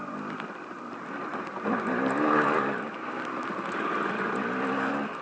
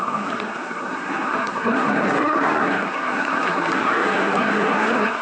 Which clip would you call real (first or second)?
first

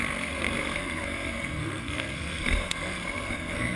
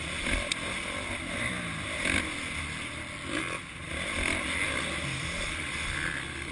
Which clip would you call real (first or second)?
second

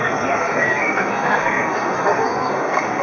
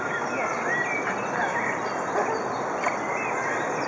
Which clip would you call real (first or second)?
second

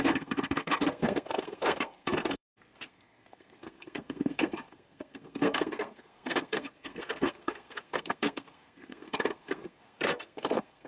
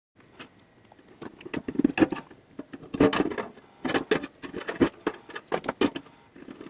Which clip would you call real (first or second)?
second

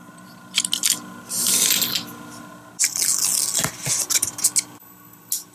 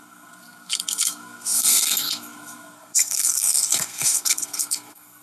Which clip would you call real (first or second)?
first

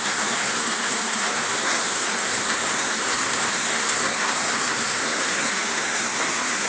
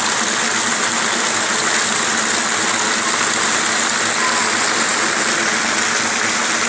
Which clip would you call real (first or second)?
second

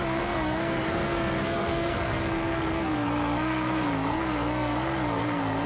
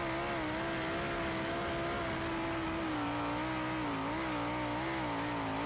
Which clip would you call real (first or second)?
second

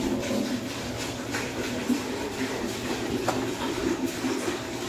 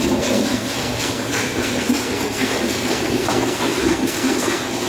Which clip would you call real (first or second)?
first